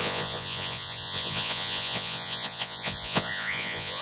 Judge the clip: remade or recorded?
remade